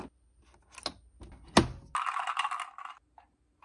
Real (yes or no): yes